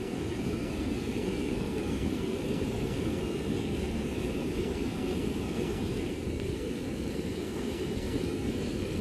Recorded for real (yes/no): no